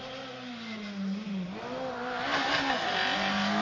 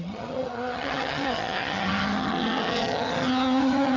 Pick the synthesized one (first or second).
second